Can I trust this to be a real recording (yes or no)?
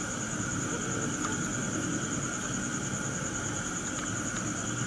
yes